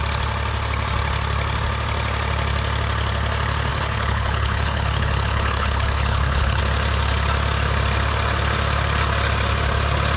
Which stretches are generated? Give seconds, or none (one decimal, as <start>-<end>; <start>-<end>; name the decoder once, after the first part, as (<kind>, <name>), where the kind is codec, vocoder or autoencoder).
3.7-6.6 (codec, HILCodec)